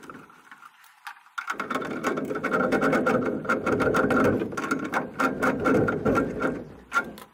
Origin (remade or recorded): recorded